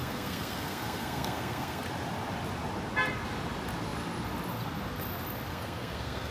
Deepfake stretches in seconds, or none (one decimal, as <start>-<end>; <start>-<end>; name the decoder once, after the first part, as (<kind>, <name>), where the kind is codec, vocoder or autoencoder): 0.0-1.8 (codec, SNAC); 5.5-6.3